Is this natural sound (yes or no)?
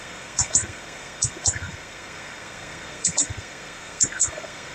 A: no